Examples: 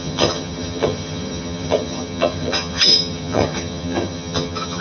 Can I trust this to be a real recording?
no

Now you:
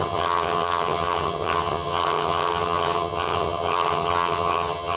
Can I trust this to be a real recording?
no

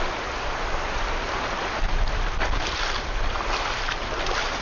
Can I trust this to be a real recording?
yes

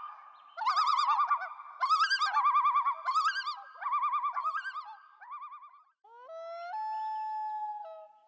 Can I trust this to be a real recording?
yes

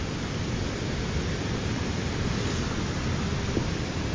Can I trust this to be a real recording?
yes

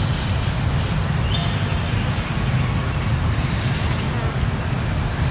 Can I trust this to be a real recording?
yes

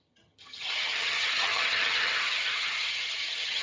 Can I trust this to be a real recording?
no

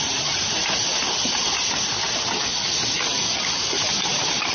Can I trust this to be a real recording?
yes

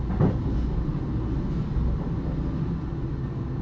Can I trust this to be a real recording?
yes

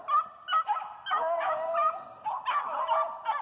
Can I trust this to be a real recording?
yes